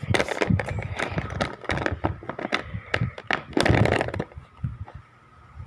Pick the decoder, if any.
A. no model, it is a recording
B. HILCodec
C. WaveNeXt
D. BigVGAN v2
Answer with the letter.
A